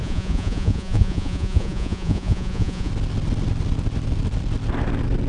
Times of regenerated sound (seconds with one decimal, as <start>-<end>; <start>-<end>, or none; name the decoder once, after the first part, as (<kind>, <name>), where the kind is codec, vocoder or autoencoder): 0.0-2.9 (vocoder, Vocos)